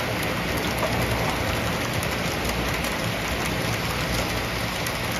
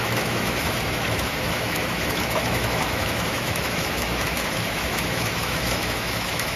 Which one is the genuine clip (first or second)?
first